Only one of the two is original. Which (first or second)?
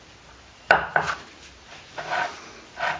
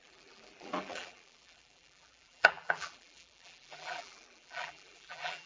first